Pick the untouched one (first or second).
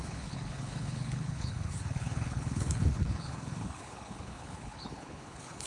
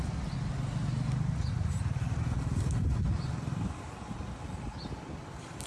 second